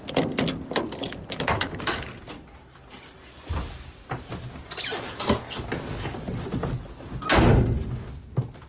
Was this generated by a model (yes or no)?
no